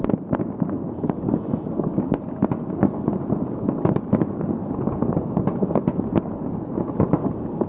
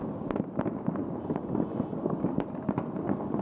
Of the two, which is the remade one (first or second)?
second